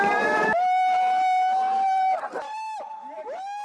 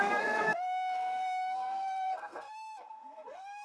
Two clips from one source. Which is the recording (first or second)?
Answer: first